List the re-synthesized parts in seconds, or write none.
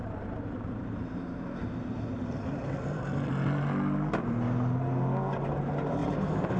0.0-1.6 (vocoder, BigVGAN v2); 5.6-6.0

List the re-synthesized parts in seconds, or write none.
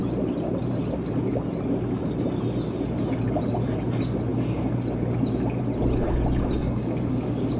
6.6-7.6 (codec, DAC)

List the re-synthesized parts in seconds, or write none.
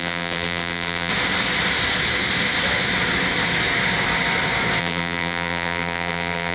0.0-1.1 (vocoder, BigVGAN v2); 4.8-6.5